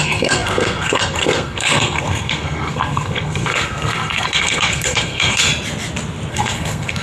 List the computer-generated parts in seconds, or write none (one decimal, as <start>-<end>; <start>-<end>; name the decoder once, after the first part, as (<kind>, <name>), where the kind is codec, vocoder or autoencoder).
0.0-5.5 (codec, SNAC); 6.3-7.0